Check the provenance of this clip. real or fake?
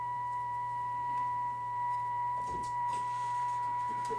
fake